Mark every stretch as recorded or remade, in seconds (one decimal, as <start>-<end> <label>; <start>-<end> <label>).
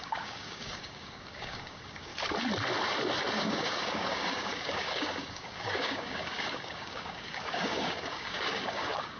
0.0-2.1 remade; 2.1-3.3 recorded; 3.3-9.2 remade